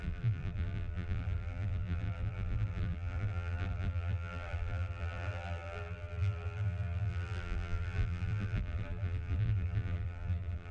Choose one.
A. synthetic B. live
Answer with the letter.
A